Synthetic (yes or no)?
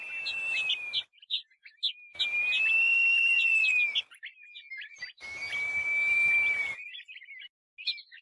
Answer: no